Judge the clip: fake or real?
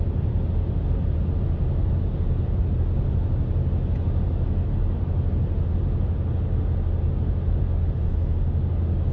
real